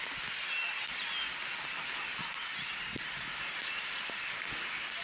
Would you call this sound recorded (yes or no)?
yes